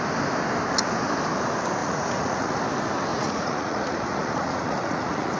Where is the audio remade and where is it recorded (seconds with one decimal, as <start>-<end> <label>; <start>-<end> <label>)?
0.0-1.8 recorded; 1.8-2.6 remade; 2.6-3.1 recorded; 3.1-5.4 remade